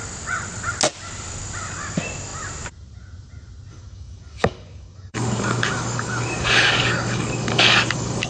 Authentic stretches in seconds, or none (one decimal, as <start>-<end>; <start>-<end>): 0.0-3.7